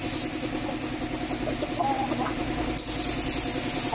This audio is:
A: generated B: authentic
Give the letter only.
B